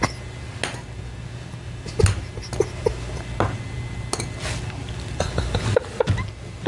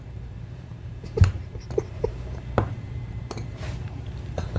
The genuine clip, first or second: first